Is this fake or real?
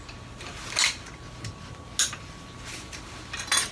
real